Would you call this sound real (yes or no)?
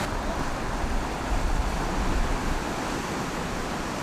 yes